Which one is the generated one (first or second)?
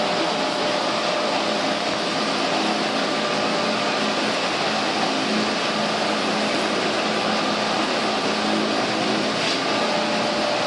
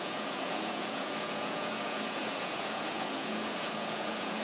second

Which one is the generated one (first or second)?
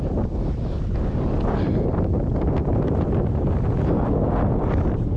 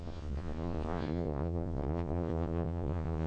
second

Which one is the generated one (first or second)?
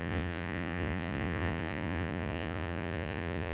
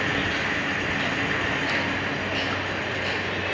first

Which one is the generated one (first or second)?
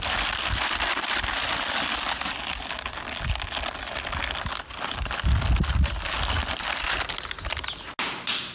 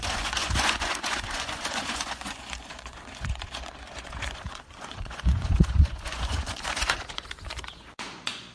second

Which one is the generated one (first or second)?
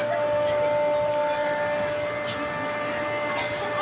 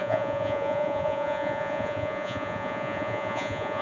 second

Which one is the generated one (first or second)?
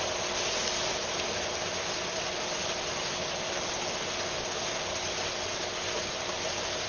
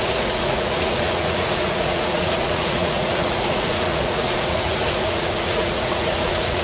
second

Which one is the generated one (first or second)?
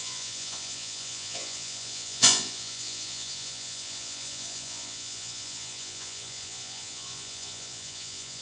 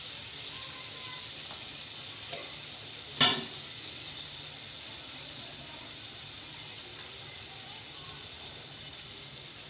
first